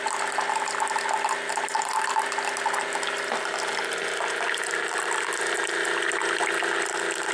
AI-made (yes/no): no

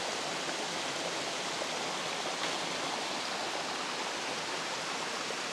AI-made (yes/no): no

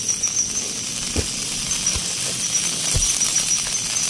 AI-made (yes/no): no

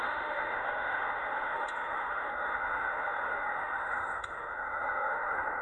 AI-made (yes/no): yes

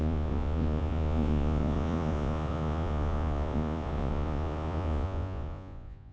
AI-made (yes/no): yes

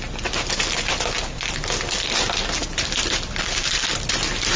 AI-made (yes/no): no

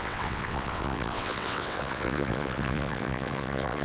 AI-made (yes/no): yes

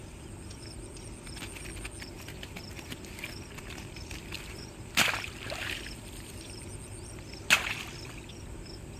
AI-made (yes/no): no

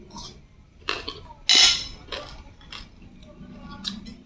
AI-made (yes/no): no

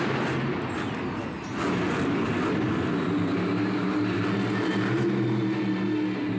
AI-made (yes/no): no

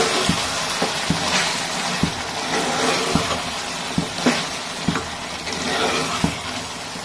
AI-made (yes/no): no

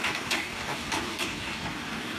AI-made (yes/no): yes